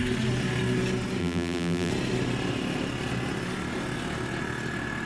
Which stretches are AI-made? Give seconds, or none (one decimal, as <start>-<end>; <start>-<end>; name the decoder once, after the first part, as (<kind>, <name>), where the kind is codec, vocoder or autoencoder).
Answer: 1.2-1.9 (vocoder, BigVGAN v2)